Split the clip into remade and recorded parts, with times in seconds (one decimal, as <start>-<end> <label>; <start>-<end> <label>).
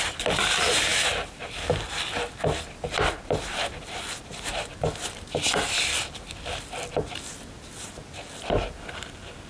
0.0-9.5 recorded